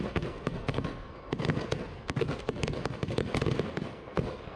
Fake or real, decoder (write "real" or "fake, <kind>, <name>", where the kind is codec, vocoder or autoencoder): fake, codec, SNAC